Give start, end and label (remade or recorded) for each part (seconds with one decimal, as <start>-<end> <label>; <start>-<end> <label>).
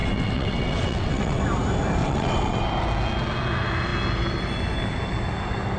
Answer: 0.0-1.4 remade; 1.4-2.0 recorded; 2.0-2.6 remade; 2.6-5.8 recorded